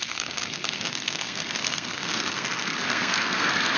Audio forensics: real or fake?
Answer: fake